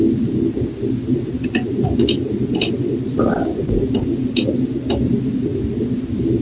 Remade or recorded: recorded